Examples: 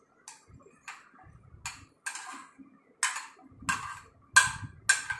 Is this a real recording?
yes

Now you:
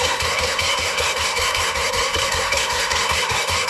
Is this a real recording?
no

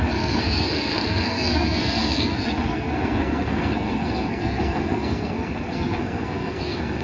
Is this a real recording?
no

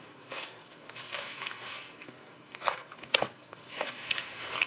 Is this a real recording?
no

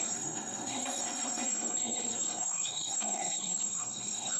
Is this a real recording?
no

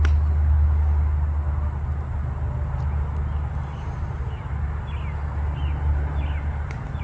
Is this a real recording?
yes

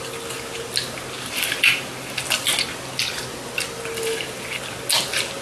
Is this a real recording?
yes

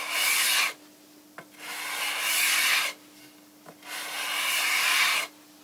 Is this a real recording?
yes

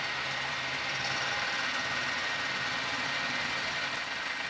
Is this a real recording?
yes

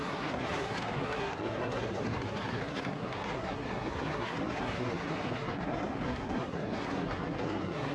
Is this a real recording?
no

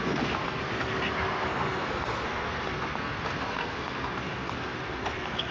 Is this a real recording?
no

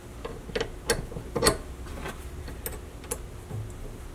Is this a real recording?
yes